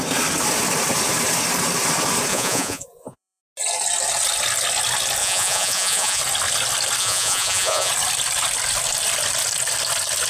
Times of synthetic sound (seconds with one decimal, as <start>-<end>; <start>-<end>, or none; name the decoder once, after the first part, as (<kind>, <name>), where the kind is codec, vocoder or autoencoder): 2.3-3.4 (vocoder, Vocos); 5.2-6.2; 7.0-7.9